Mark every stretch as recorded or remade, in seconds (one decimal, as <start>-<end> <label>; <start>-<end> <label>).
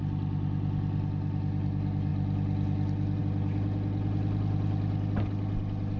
0.0-6.0 recorded